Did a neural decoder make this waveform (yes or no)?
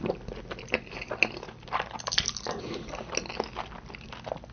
no